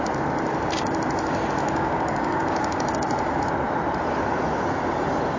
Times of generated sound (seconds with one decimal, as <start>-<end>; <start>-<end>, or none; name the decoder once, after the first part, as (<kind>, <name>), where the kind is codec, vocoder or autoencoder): 1.6-2.9 (codec, DAC)